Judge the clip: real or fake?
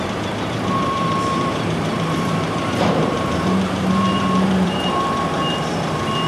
fake